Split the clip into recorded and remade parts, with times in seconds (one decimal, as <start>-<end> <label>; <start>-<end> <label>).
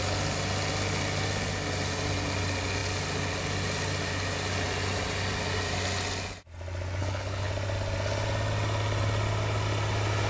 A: 0.0-7.0 recorded; 7.0-7.5 remade; 7.5-10.3 recorded